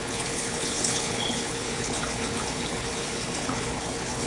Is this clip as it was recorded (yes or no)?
no